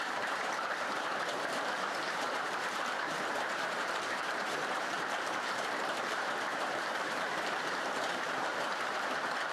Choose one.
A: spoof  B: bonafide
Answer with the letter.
A